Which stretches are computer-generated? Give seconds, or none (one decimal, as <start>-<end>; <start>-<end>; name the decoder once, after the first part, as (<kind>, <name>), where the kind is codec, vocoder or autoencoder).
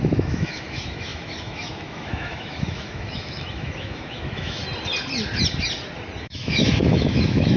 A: 0.0-4.6 (autoencoder, DAC-VAE); 6.2-7.6